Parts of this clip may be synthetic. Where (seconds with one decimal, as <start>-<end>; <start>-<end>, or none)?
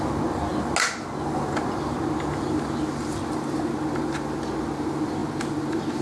none